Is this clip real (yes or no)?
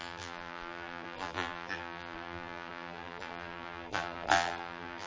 no